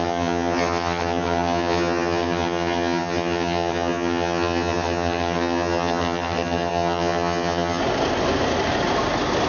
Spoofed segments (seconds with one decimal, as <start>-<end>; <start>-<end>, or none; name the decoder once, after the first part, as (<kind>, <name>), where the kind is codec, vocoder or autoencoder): 0.0-7.8 (vocoder, HiFi-GAN)